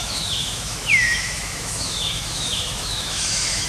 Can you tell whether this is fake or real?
fake